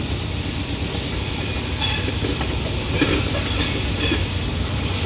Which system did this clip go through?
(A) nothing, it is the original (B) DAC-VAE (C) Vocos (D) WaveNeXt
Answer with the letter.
A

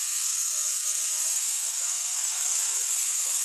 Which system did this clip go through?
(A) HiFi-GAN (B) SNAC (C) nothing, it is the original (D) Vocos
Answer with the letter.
B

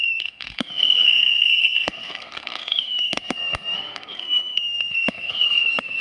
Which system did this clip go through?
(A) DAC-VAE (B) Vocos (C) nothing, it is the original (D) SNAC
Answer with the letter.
D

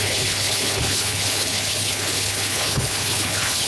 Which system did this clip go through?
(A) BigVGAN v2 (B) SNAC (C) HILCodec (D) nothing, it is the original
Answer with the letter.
C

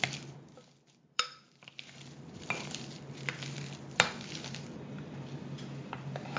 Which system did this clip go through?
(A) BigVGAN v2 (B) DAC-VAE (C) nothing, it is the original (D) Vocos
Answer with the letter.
A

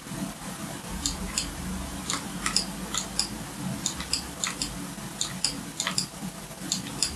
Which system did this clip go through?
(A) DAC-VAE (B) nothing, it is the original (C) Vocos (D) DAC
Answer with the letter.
B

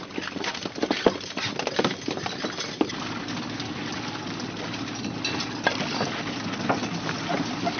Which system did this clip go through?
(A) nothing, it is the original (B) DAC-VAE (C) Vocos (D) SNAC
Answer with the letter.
A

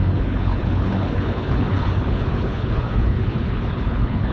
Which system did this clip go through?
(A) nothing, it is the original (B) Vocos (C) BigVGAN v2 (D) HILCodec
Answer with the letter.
D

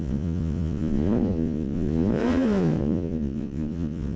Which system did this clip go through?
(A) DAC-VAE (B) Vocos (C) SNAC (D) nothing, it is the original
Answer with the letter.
B